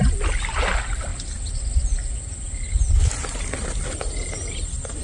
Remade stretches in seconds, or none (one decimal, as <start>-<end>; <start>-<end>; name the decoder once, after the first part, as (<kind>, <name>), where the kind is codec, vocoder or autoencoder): none